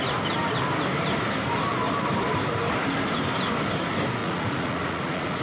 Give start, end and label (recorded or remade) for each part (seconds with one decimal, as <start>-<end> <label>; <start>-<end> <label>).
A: 0.0-4.2 recorded; 4.2-5.4 remade